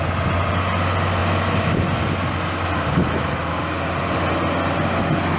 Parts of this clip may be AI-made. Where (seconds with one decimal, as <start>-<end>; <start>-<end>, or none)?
none